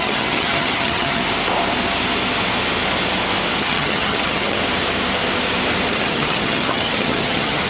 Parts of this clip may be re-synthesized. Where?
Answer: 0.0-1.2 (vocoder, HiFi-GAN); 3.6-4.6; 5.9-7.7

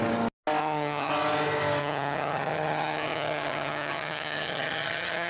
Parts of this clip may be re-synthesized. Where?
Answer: 0.6-1.1 (vocoder, HiFi-GAN); 1.8-5.3